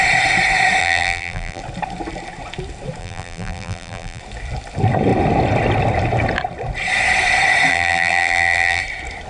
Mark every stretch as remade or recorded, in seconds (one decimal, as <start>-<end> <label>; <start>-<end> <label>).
0.0-0.8 recorded; 0.8-1.6 remade; 1.6-3.0 recorded; 3.0-4.2 remade; 4.2-7.7 recorded; 7.7-8.8 remade; 8.8-9.3 recorded